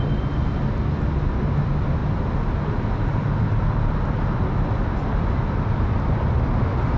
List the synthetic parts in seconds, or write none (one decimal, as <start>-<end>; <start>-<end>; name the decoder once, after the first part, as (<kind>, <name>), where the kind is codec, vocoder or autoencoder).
none